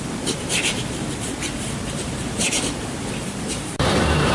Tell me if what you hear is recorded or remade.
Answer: remade